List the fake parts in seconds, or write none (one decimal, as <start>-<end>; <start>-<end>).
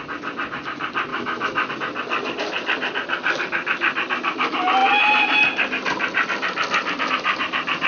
1.1-1.7